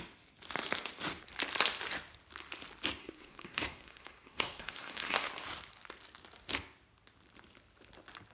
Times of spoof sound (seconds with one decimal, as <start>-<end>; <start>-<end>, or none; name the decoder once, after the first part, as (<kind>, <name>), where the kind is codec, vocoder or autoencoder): 3.0-5.3 (codec, SNAC)